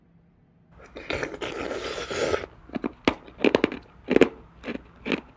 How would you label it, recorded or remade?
recorded